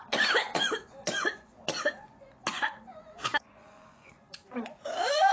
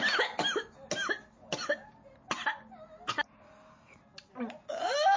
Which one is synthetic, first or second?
first